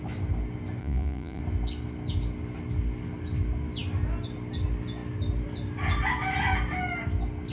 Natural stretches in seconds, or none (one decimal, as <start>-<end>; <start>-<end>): 0.0-0.8; 1.4-7.5